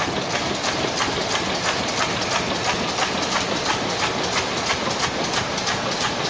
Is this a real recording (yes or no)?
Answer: yes